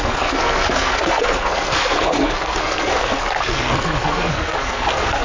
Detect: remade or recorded remade